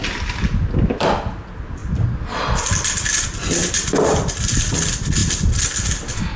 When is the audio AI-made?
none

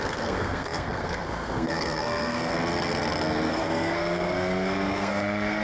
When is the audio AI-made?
0.0-2.5; 3.5-5.6

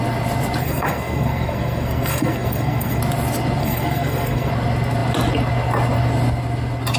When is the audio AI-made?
0.6-3.0; 3.6-4.5